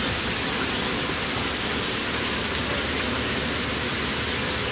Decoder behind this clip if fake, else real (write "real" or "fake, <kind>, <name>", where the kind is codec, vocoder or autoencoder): real